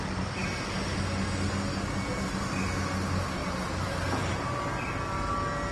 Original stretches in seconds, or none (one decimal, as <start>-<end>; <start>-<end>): 0.0-5.7